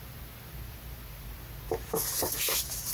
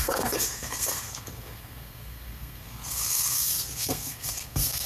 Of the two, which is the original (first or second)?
first